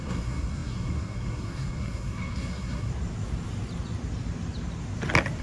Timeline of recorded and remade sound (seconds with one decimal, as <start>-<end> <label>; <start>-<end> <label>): 0.0-2.9 remade; 2.9-5.4 recorded